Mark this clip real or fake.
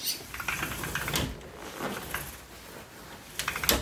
real